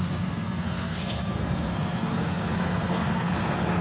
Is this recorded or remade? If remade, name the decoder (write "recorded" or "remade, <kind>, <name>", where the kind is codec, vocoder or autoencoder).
remade, codec, SNAC